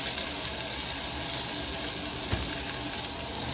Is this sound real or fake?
real